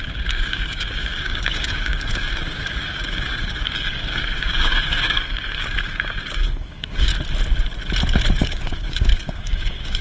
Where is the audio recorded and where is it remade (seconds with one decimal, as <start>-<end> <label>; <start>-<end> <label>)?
0.0-7.1 remade; 7.1-8.4 recorded; 8.4-10.0 remade